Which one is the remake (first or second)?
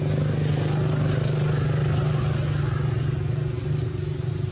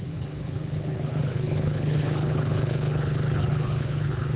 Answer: second